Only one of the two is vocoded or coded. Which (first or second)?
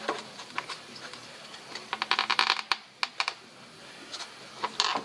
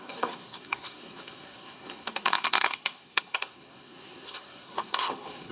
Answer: second